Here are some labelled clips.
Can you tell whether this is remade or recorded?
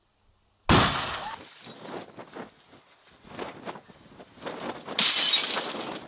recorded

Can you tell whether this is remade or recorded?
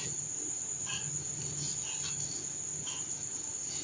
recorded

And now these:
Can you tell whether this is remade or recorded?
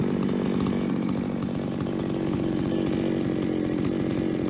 recorded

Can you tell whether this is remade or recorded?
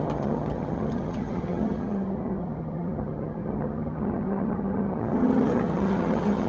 remade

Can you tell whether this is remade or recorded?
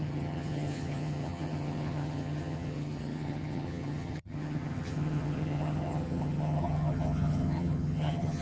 remade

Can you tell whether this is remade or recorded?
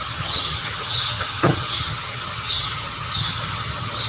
remade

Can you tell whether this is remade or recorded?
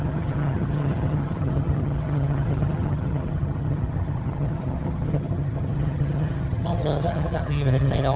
remade